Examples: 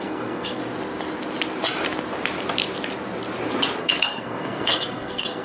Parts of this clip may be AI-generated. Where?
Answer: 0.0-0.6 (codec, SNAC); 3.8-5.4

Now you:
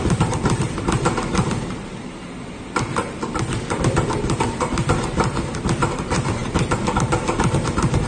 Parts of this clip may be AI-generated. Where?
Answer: none

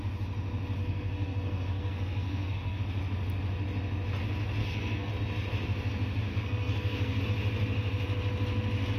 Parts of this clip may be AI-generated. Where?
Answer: 0.8-2.8 (codec, SNAC); 4.6-5.1; 6.3-7.2

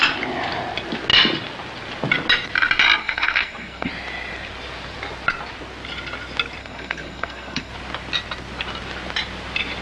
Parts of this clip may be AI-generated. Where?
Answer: 3.0-3.9 (codec, SNAC); 6.6-7.7

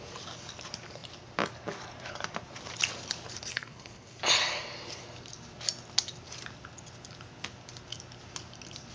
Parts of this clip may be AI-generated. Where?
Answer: 3.5-4.2 (codec, SNAC)